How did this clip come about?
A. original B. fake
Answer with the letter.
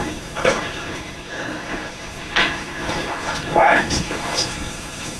B